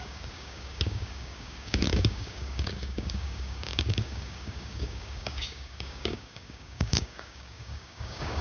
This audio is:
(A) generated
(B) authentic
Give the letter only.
A